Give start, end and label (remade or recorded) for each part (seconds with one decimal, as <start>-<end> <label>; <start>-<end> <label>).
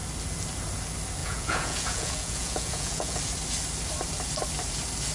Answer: 0.0-1.2 recorded; 1.2-3.2 remade; 3.2-5.1 recorded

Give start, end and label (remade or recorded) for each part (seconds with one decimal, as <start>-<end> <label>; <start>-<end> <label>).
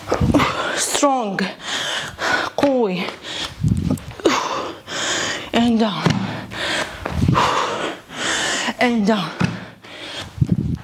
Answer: 0.0-1.6 recorded; 1.6-2.3 remade; 2.3-7.7 recorded; 7.7-9.0 remade; 9.0-10.8 recorded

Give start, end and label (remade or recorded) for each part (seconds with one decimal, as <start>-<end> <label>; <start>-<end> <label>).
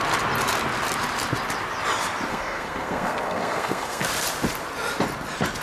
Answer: 0.0-2.3 recorded; 2.3-4.0 remade; 4.0-5.6 recorded